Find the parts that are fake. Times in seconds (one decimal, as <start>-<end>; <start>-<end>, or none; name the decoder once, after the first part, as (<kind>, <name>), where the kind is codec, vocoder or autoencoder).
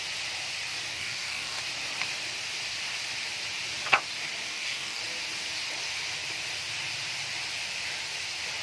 0.9-1.6 (codec, DAC); 4.5-5.0